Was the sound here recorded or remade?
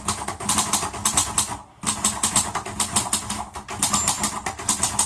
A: recorded